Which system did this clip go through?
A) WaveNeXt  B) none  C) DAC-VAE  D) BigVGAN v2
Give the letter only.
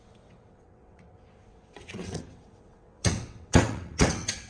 A